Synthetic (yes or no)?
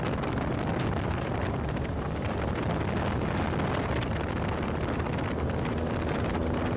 no